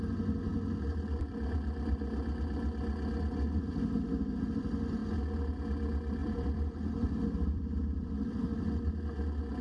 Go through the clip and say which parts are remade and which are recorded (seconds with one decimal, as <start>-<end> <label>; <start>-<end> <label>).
0.0-0.5 recorded; 0.5-1.5 remade; 1.5-6.2 recorded; 6.2-8.8 remade; 8.8-9.6 recorded

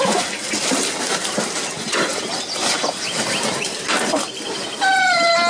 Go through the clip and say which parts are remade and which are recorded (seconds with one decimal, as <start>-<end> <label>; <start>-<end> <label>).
0.0-5.5 recorded